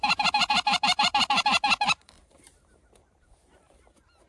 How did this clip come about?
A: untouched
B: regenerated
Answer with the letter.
B